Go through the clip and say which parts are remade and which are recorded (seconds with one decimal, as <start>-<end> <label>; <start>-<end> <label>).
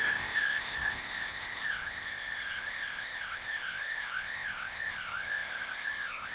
0.0-6.3 remade